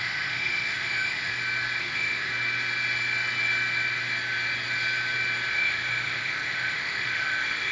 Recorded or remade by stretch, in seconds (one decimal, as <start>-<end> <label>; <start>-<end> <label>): 0.0-1.3 remade; 1.3-1.8 recorded; 1.8-2.3 remade; 2.3-5.5 recorded; 5.5-7.7 remade